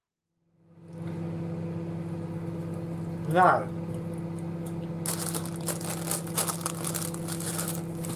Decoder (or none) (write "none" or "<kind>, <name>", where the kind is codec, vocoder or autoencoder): none